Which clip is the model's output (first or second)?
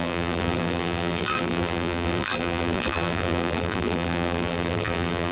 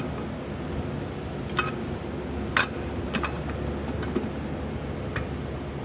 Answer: first